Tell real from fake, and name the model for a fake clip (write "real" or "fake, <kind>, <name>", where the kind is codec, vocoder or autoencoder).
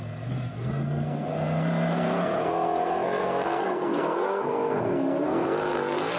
fake, codec, SNAC